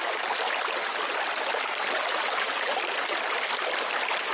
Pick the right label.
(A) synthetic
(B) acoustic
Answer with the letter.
A